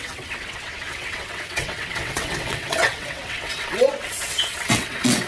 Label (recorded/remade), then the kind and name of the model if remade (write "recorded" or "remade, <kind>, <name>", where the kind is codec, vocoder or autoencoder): remade, vocoder, WaveNeXt